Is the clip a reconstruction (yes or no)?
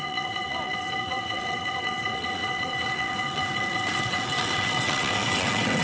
yes